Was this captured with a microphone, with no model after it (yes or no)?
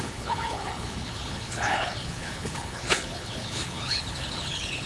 no